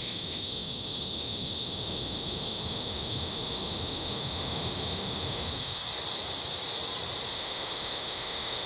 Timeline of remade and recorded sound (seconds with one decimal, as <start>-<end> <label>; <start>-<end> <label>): 0.0-5.8 remade; 5.8-7.3 recorded; 7.3-8.7 remade